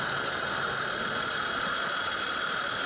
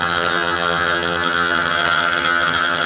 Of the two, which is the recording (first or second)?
first